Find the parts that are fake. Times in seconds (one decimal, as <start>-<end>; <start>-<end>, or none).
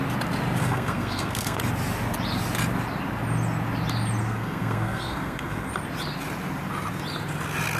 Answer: 0.6-1.6; 4.2-5.7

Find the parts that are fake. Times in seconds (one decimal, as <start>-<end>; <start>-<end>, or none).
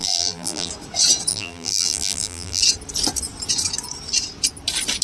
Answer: 0.0-0.7; 1.3-2.6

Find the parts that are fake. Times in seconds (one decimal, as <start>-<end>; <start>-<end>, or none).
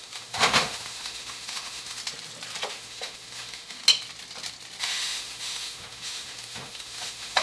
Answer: 0.0-2.0; 2.7-3.8; 4.8-7.4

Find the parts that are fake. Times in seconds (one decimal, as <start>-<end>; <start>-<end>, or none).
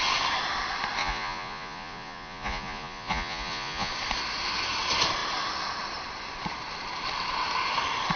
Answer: 1.0-3.9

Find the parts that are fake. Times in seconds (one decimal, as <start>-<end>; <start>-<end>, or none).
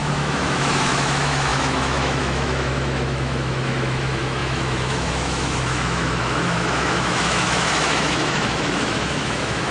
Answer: 0.0-9.7